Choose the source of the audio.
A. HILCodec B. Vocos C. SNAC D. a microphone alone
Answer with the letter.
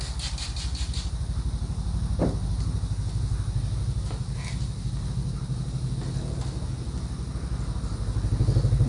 D